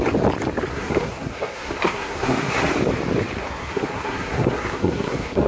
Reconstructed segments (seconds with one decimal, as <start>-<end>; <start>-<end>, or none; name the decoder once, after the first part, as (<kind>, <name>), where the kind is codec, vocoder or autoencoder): 0.7-2.7 (codec, SNAC); 3.4-5.5